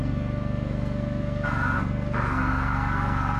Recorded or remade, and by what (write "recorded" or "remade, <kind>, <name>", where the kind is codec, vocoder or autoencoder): remade, codec, SNAC